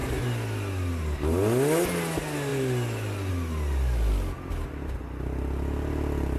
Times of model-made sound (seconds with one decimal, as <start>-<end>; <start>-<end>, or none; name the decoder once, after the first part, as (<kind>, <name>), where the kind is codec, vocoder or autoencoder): none